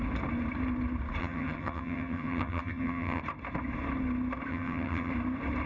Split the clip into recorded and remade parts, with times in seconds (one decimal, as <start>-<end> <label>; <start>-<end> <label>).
0.0-1.2 recorded; 1.2-3.2 remade; 3.2-4.5 recorded; 4.5-5.1 remade; 5.1-5.7 recorded